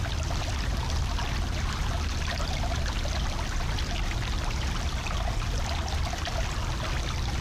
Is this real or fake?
real